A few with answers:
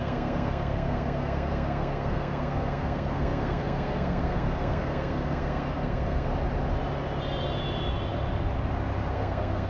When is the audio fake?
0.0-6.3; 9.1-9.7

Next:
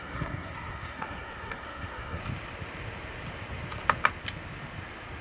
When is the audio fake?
0.0-2.2